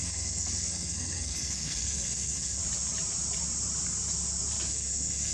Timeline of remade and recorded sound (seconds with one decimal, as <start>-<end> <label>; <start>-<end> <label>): 0.0-2.6 remade; 2.6-4.7 recorded; 4.7-5.3 remade